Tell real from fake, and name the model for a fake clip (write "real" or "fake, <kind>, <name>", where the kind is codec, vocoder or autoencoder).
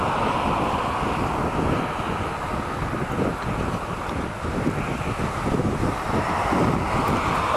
real